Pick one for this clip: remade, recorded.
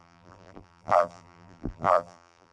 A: remade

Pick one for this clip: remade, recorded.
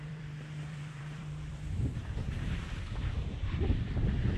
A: remade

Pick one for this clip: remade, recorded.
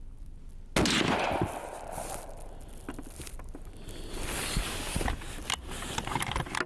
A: recorded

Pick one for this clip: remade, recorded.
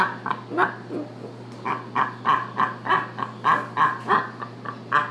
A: recorded